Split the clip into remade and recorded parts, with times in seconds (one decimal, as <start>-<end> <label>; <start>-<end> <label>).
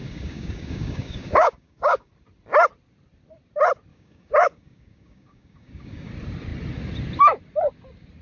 0.0-2.1 remade; 2.1-3.9 recorded; 3.9-6.1 remade; 6.1-8.2 recorded